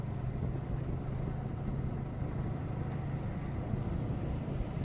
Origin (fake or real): real